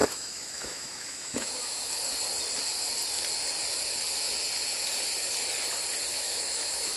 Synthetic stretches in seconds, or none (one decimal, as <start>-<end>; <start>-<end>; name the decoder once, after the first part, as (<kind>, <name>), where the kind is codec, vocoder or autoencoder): 0.0-1.9 (autoencoder, DAC-VAE); 6.1-7.0